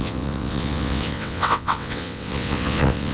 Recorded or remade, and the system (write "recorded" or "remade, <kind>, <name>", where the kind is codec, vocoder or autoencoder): remade, vocoder, WaveNeXt